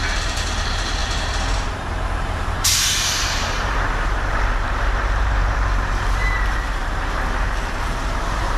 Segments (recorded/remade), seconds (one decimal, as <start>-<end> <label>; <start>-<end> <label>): 0.0-8.6 remade